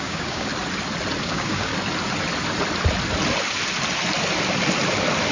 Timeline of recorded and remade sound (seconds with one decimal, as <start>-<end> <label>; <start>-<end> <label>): 0.0-0.5 remade; 0.5-1.2 recorded; 1.2-1.7 remade; 1.7-5.3 recorded

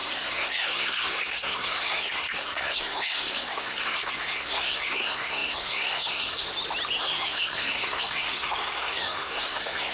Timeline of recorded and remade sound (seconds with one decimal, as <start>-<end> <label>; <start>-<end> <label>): 0.0-6.5 remade; 6.5-7.0 recorded; 7.0-9.9 remade